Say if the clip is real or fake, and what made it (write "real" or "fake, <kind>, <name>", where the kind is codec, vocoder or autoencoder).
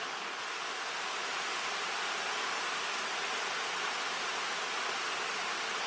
real